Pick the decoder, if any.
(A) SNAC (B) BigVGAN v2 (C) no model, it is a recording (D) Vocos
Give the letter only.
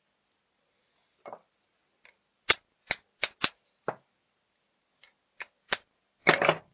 C